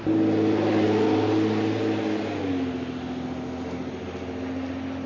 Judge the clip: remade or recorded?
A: recorded